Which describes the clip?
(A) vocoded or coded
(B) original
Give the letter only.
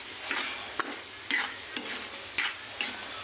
B